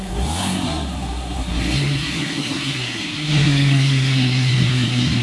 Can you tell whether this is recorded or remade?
remade